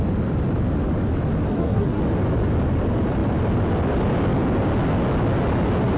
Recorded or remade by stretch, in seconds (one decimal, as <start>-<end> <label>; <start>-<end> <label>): 0.0-1.5 recorded; 1.5-2.0 remade; 2.0-6.0 recorded